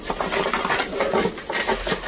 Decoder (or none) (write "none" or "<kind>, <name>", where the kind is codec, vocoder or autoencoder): none